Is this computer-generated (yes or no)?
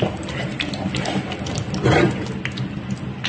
no